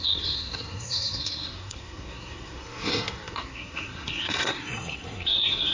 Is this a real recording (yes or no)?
no